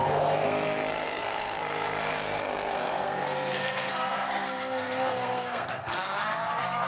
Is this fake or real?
fake